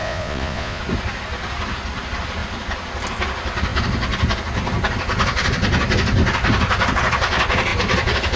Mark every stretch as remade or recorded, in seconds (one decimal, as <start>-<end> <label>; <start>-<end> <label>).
0.0-0.8 remade; 0.8-8.4 recorded